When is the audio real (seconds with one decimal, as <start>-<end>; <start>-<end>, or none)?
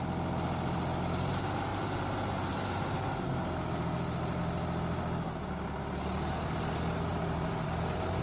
0.0-1.7; 4.4-7.1